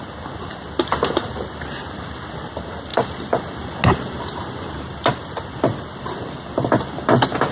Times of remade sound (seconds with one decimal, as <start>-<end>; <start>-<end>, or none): none